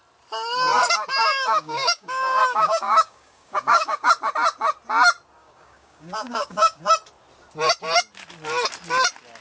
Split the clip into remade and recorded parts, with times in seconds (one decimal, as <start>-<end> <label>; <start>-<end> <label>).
0.0-1.2 recorded; 1.2-4.1 remade; 4.1-5.4 recorded; 5.4-6.8 remade; 6.8-9.4 recorded